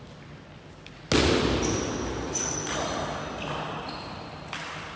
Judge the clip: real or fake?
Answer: real